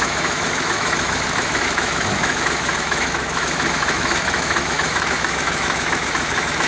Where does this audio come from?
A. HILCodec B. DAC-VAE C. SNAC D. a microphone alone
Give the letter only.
B